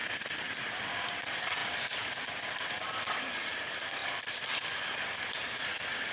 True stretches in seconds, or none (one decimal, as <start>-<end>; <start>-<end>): 0.9-4.0; 4.6-6.1